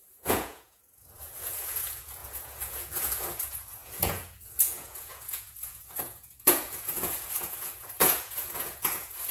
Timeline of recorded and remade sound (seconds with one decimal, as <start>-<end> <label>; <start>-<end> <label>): 0.0-9.3 remade